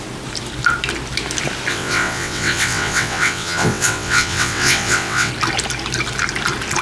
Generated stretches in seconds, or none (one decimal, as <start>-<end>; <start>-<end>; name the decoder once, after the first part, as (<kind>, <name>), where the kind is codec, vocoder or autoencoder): 1.7-5.3 (vocoder, WaveNeXt)